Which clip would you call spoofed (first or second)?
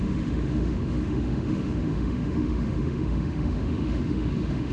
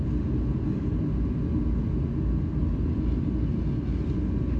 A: first